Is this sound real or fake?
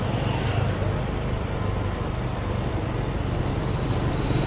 real